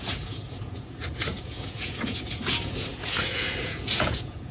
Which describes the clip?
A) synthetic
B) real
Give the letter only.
A